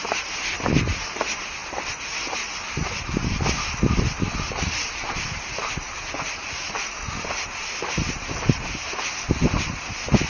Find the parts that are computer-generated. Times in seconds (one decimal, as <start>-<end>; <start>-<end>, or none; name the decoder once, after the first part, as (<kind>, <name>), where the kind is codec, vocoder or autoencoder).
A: none